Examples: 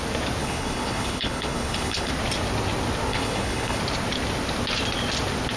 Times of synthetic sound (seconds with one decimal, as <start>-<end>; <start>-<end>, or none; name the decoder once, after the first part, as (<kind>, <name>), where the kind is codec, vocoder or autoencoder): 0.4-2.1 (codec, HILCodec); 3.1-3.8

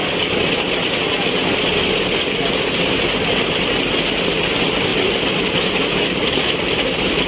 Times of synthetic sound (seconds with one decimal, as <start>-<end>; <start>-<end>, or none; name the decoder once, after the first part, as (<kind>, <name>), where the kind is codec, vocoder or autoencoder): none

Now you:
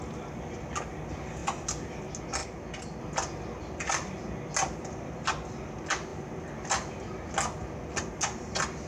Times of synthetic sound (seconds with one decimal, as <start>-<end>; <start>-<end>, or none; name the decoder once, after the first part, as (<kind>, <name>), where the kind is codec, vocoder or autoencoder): none